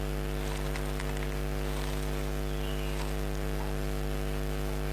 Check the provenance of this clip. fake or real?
real